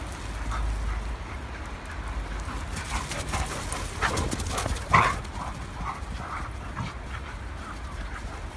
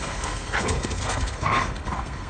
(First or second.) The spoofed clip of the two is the second